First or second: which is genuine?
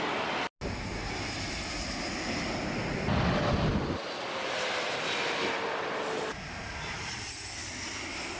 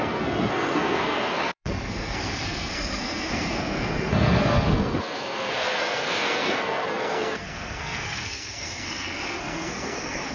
first